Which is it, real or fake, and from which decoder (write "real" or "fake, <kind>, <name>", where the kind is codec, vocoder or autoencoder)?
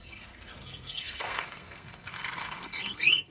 fake, codec, SNAC